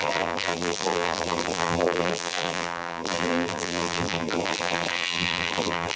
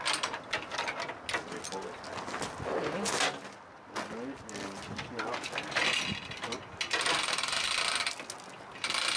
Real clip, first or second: second